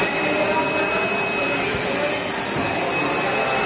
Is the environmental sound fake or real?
real